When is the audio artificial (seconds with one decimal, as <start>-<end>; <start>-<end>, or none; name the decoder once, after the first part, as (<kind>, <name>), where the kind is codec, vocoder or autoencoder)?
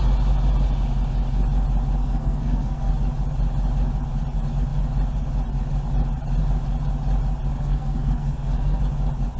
2.0-2.9 (codec, SNAC); 7.5-8.8